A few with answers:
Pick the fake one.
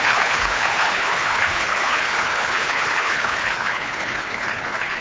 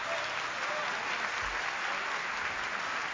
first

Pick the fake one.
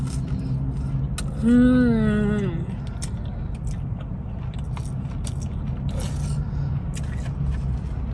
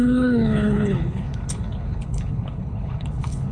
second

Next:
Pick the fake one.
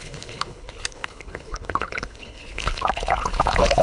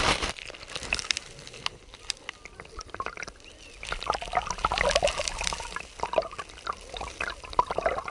first